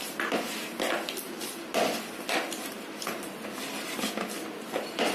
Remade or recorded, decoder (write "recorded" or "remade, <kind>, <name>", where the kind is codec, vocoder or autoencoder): recorded